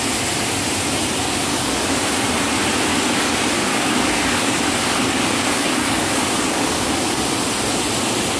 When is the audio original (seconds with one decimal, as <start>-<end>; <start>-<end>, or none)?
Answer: 0.0-1.5; 2.1-2.9; 7.3-8.4